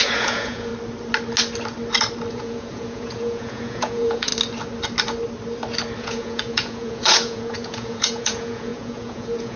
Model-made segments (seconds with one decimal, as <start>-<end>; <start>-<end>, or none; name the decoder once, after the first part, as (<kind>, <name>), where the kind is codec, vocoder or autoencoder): 0.0-0.7 (vocoder, Vocos); 2.3-4.3; 6.0-9.6

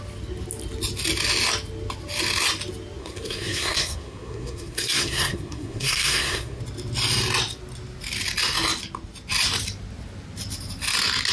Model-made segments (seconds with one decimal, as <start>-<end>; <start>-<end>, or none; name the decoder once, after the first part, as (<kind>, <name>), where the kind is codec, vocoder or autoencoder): 3.0-6.6 (codec, SNAC)